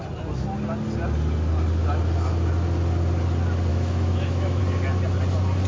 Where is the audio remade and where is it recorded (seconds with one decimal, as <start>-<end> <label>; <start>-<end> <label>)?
0.0-3.7 recorded; 3.7-4.6 remade; 4.6-5.7 recorded